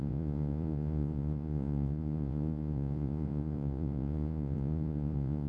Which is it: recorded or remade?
remade